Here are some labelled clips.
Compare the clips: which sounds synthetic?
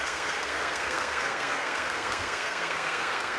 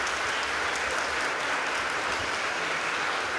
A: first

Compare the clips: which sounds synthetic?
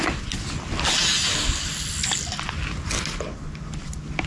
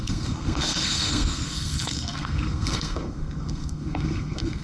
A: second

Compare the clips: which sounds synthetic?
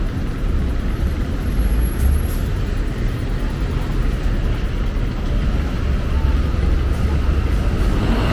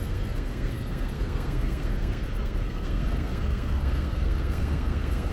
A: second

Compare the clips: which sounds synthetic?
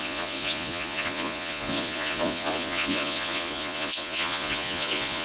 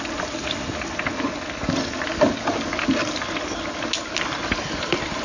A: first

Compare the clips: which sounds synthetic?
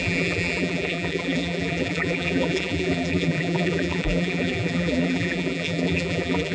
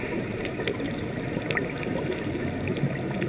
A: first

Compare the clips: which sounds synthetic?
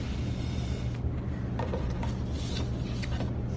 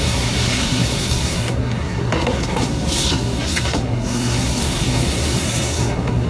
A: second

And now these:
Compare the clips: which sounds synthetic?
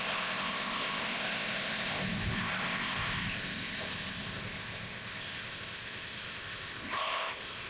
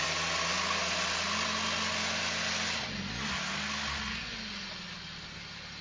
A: first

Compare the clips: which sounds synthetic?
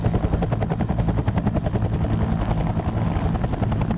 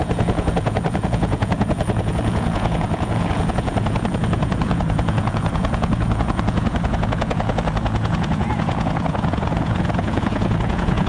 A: second